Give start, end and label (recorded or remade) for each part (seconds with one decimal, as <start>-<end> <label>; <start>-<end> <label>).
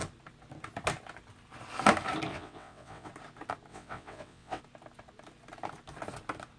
0.0-2.3 recorded; 2.3-3.1 remade; 3.1-3.7 recorded; 3.7-4.6 remade; 4.6-6.6 recorded